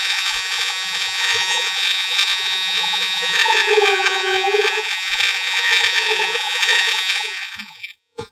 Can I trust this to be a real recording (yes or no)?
no